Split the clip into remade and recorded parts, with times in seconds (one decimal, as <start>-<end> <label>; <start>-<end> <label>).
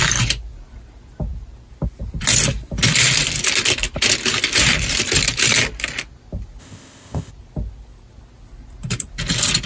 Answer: 0.0-6.6 recorded; 6.6-7.3 remade; 7.3-9.7 recorded